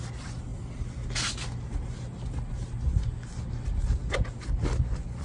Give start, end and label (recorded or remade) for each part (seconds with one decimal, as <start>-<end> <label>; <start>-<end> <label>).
0.0-5.2 recorded